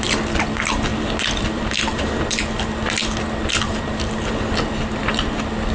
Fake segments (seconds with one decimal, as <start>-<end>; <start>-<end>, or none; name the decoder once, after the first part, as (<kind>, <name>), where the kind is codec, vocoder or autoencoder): 0.9-2.2 (vocoder, BigVGAN v2)